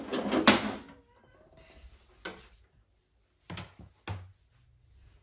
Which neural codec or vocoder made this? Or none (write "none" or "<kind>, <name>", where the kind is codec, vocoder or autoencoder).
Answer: none